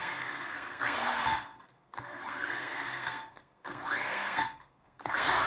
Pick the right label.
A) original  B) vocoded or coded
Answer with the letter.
B